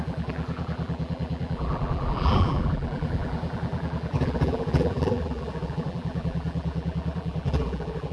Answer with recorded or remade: remade